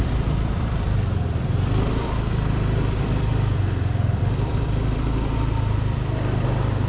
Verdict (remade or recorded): remade